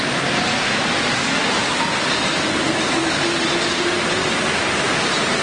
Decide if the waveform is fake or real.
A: real